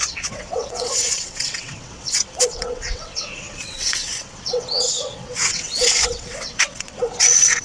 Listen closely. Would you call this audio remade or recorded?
remade